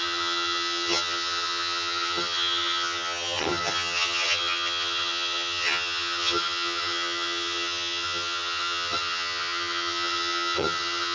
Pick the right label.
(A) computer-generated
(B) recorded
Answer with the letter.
A